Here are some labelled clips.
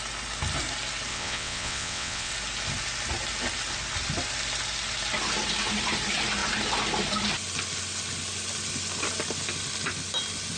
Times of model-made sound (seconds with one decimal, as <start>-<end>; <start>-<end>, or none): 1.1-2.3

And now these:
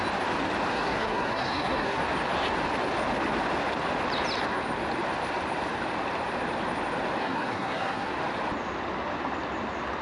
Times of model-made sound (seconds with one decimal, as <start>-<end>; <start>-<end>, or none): 0.7-2.0; 7.2-8.1

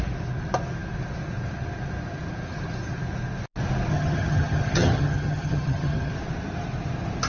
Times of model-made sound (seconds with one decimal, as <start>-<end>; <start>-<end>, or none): 3.9-6.1

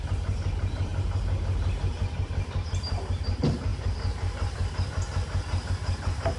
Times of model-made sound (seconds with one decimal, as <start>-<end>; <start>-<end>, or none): none